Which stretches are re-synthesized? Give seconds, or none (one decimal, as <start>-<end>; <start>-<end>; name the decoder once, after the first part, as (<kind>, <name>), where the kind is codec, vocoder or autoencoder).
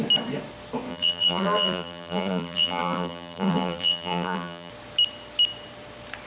0.9-4.7 (vocoder, BigVGAN v2)